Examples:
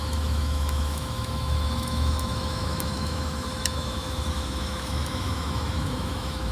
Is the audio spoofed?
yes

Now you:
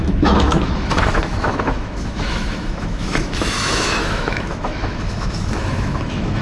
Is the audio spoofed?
yes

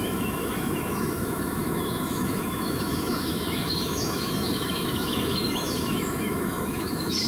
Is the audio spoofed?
yes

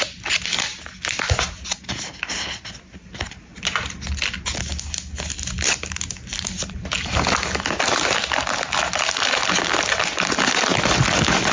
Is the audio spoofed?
no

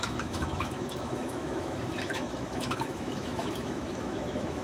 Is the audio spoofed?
yes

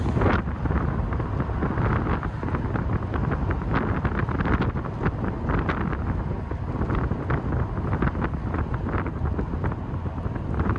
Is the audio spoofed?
no